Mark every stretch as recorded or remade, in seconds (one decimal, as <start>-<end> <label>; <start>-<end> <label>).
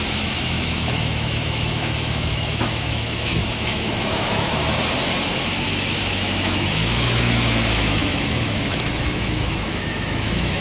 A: 0.0-4.6 remade; 4.6-5.4 recorded; 5.4-10.6 remade